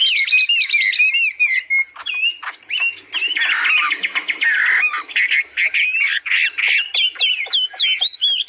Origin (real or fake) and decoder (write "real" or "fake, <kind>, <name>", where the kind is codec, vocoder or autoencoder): real